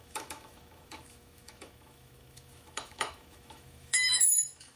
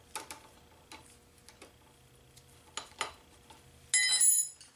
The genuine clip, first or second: second